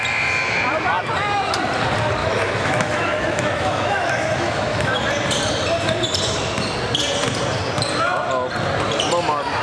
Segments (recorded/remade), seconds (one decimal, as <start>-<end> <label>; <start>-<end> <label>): 0.0-2.2 recorded; 2.2-5.0 remade; 5.0-9.6 recorded